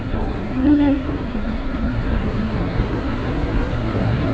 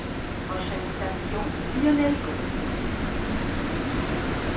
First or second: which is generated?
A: first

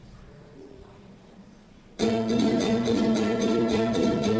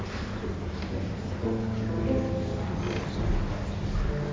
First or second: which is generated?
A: first